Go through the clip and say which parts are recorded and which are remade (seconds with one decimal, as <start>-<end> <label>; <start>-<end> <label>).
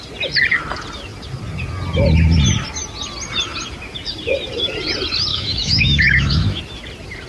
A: 0.0-5.3 recorded; 5.3-6.6 remade; 6.6-7.3 recorded